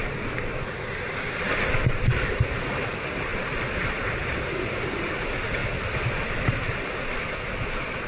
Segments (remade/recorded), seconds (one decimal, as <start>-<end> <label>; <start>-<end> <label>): 0.0-0.9 recorded; 0.9-3.3 remade; 3.3-3.8 recorded; 3.8-5.6 remade; 5.6-7.6 recorded; 7.6-8.1 remade